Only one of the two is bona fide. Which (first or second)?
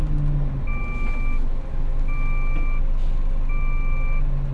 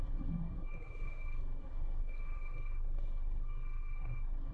first